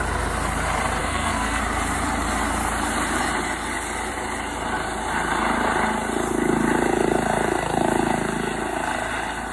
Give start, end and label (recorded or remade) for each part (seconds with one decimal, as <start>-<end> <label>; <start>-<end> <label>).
0.0-1.0 recorded; 1.0-1.6 remade; 1.6-9.5 recorded